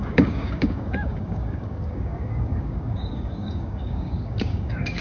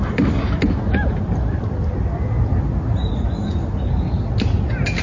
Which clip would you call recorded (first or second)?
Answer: second